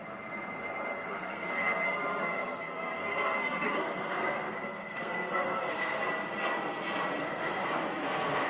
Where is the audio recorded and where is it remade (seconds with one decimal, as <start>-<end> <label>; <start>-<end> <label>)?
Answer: 0.0-1.1 recorded; 1.1-6.0 remade; 6.0-7.2 recorded; 7.2-8.5 remade